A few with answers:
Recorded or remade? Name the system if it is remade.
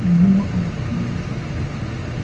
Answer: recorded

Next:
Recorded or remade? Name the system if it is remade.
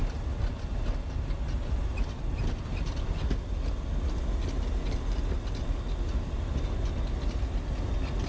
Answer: recorded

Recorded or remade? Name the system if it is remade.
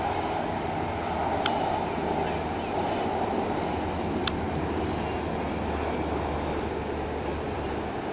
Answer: recorded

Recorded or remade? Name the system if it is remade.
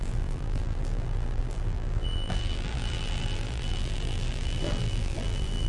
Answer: remade, vocoder, BigVGAN v2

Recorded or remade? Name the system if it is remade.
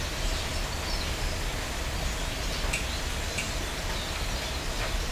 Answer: recorded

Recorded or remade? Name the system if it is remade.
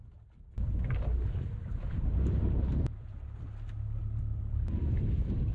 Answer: recorded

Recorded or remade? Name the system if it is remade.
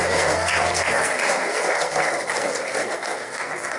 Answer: remade, codec, SNAC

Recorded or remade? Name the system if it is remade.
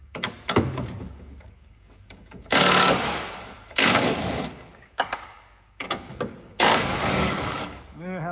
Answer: remade, codec, DAC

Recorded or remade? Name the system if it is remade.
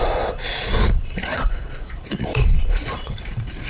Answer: remade, vocoder, Vocos